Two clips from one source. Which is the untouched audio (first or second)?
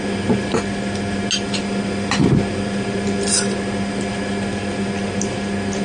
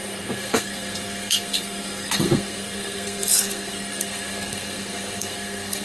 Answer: first